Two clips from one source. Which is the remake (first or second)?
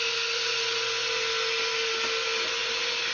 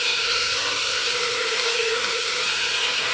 second